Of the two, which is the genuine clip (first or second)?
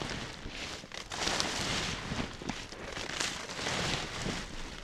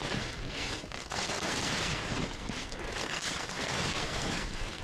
first